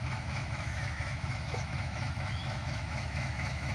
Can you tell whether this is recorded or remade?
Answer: remade